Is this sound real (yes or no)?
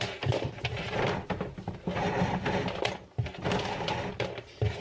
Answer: yes